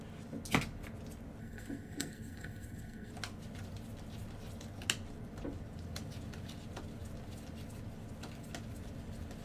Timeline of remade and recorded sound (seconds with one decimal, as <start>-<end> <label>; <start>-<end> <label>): 0.0-1.4 recorded; 1.4-3.1 remade; 3.1-9.4 recorded